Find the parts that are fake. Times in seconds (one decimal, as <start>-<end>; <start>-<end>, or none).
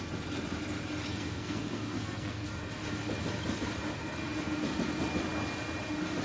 1.1-2.5